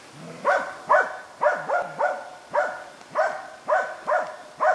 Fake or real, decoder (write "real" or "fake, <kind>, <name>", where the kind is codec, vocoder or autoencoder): real